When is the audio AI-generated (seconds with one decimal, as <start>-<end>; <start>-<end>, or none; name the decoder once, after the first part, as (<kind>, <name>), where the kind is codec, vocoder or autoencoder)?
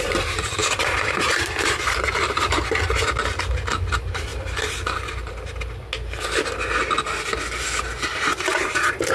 0.6-2.8 (vocoder, BigVGAN v2); 4.3-5.3; 8.1-9.1